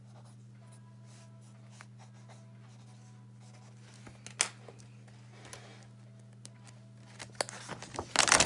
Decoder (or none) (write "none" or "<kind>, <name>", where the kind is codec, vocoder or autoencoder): none